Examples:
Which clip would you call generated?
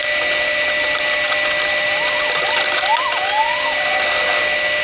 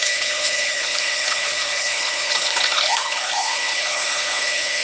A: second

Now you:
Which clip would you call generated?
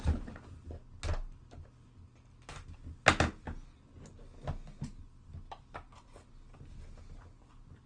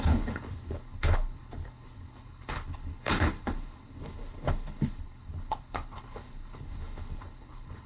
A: second